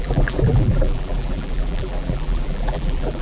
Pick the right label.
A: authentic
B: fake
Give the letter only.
B